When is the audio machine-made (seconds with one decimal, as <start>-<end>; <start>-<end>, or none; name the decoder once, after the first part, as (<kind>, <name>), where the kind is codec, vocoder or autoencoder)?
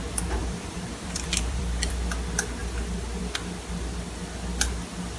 0.4-1.9 (vocoder, BigVGAN v2)